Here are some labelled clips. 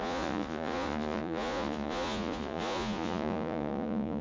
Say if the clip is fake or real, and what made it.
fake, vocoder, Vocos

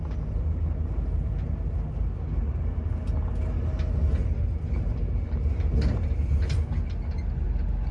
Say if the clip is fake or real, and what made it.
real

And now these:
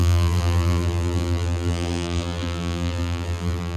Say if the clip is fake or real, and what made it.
fake, vocoder, BigVGAN v2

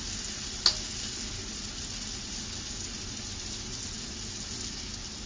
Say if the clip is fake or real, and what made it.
real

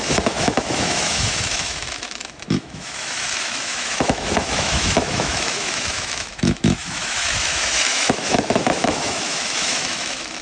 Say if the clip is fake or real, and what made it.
fake, autoencoder, DAC-VAE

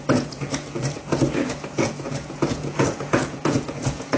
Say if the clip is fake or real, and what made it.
fake, vocoder, Vocos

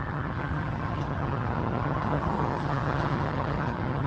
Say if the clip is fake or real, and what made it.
fake, vocoder, HiFi-GAN